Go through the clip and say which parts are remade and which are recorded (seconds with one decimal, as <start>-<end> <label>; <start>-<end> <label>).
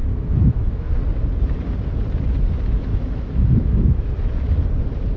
0.0-1.0 remade; 1.0-2.9 recorded; 2.9-4.1 remade; 4.1-5.2 recorded